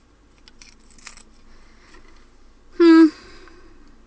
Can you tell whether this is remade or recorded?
recorded